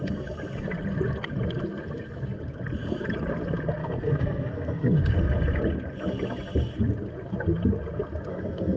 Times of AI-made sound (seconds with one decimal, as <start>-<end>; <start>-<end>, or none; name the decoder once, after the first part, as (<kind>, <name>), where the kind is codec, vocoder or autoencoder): 3.8-5.0 (codec, SNAC); 8.3-8.8